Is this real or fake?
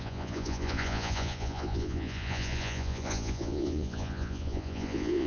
fake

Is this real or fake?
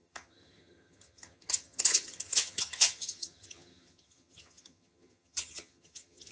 fake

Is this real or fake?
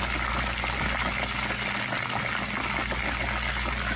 real